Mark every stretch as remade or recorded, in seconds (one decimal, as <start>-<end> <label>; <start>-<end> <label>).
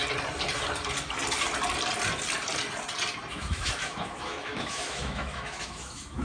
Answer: 0.0-3.3 recorded; 3.3-6.2 remade